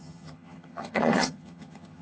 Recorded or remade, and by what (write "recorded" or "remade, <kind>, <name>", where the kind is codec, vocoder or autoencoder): remade, vocoder, HiFi-GAN